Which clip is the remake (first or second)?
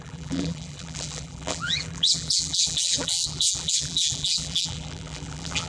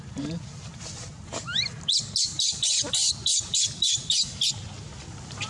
first